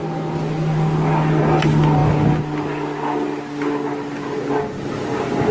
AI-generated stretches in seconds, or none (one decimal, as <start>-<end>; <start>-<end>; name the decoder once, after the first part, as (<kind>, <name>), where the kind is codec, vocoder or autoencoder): none